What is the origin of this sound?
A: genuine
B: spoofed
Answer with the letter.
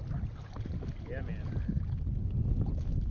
A